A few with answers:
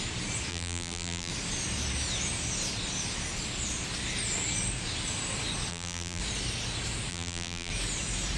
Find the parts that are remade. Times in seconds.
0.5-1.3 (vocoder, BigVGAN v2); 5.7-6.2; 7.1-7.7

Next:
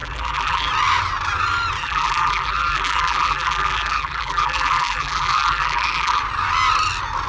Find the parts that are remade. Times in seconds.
0.0-0.7 (vocoder, BigVGAN v2); 1.8-6.2

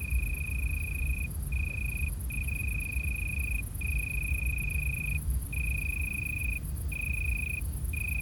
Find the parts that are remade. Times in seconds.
0.0-2.6 (vocoder, BigVGAN v2); 4.3-6.4

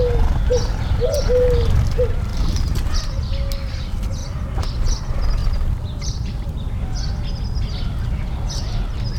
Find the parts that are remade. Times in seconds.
2.3-3.0 (vocoder, BigVGAN v2); 4.2-5.0; 5.4-6.6

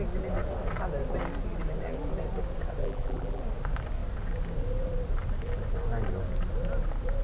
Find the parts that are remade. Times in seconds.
2.8-3.4 (vocoder, BigVGAN v2)

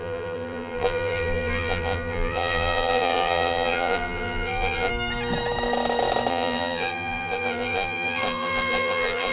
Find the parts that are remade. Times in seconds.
0.0-4.9 (vocoder, BigVGAN v2); 6.3-9.3